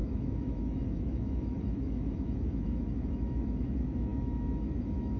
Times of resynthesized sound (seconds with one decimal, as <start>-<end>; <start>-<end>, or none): 0.0-5.2